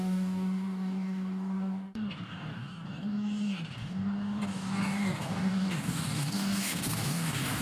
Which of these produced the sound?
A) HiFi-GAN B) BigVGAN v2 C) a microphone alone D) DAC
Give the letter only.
D